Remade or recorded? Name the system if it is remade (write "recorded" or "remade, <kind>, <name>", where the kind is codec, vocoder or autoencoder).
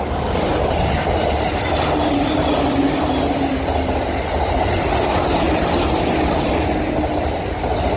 recorded